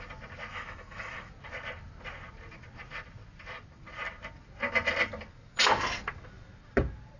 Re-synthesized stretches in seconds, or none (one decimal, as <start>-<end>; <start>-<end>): 0.5-1.3